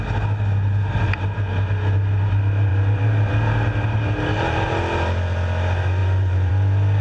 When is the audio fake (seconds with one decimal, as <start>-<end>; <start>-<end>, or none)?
2.7-3.3; 6.0-6.5